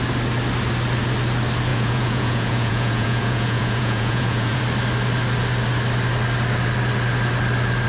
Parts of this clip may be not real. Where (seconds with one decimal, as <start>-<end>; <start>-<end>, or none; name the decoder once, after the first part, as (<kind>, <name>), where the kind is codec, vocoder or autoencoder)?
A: 1.7-4.6 (vocoder, Vocos)